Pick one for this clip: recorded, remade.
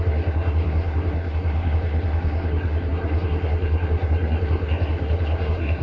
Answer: remade